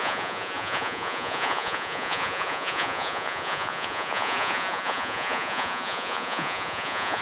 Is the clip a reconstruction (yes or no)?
yes